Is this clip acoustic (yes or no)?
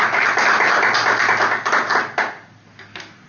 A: yes